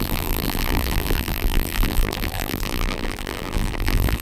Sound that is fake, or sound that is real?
fake